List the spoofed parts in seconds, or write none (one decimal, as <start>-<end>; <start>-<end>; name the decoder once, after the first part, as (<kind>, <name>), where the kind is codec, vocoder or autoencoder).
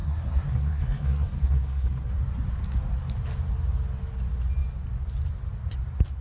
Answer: 0.0-2.1 (codec, SNAC)